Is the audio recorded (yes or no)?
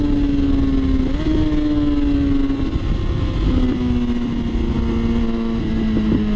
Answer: yes